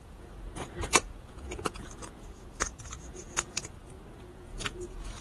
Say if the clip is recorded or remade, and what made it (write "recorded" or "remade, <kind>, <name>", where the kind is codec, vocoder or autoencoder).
remade, vocoder, Vocos